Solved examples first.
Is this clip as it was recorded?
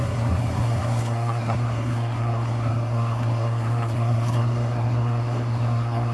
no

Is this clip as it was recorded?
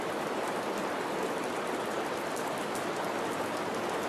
yes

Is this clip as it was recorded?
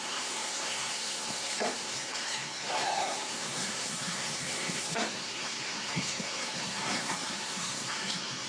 no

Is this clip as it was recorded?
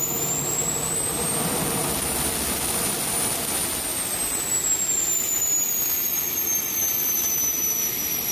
yes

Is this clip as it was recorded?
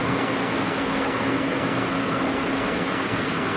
no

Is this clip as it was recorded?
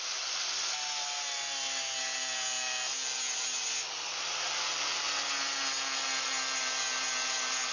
yes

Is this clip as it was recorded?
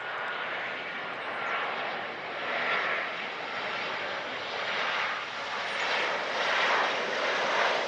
yes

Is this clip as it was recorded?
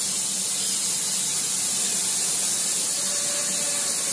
yes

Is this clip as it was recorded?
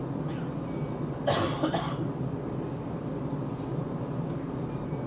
yes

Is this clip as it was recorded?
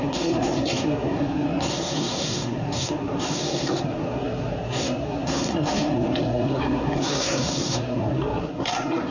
no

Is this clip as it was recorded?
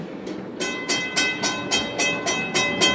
yes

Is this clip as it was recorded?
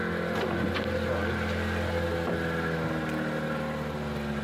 yes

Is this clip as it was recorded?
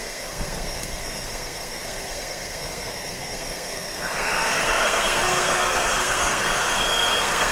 no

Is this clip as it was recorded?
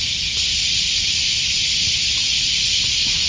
yes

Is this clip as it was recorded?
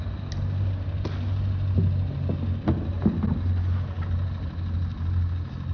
yes